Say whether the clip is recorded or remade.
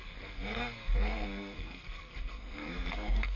remade